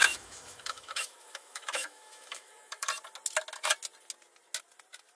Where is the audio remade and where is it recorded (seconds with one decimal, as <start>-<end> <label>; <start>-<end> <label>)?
0.0-2.9 remade; 2.9-5.2 recorded